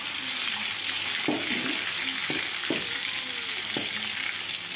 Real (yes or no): yes